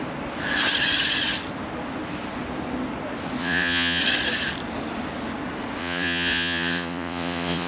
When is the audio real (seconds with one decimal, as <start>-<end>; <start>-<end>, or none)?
0.0-3.4; 4.0-5.8